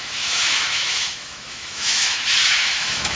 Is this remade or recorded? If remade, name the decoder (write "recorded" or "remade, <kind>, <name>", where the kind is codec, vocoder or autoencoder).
remade, autoencoder, DAC-VAE